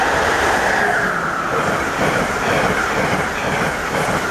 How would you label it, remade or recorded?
recorded